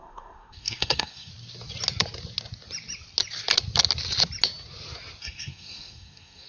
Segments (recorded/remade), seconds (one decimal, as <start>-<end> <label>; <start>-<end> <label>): 0.0-1.3 remade; 1.3-5.2 recorded; 5.2-6.5 remade